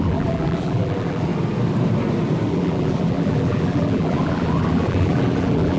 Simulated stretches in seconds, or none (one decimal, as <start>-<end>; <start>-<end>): 0.0-1.3; 2.5-5.8